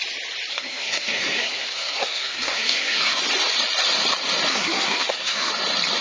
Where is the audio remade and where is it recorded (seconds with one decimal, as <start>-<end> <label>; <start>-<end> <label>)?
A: 0.0-0.5 recorded; 0.5-3.2 remade; 3.2-4.5 recorded; 4.5-5.5 remade; 5.5-6.0 recorded